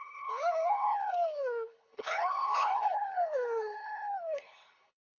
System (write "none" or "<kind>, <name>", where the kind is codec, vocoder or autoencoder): codec, HILCodec